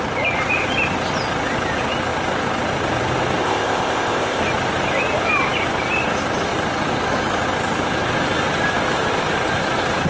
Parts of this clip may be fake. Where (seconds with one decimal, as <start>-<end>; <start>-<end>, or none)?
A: 3.4-4.4